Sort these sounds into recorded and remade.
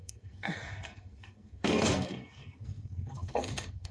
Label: remade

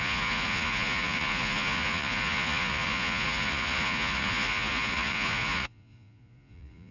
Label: remade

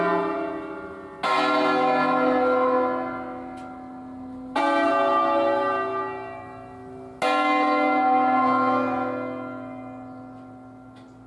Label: recorded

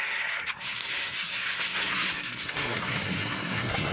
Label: remade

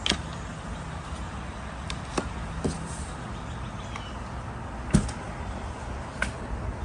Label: recorded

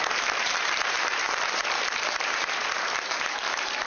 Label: remade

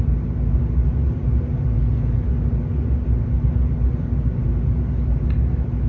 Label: recorded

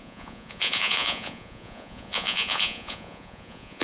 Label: remade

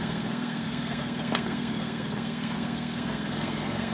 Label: remade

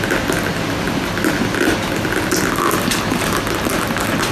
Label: recorded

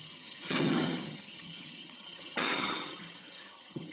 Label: remade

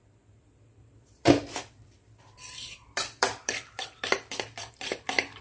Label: remade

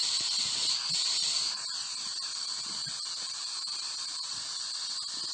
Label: recorded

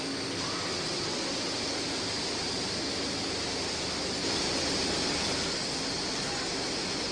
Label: recorded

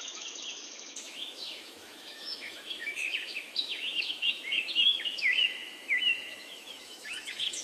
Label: remade